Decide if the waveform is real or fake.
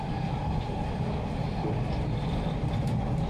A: real